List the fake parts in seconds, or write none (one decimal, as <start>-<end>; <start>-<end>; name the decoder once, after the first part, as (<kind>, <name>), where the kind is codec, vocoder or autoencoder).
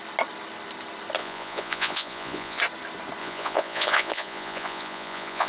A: 1.2-2.6 (vocoder, Vocos); 3.2-5.5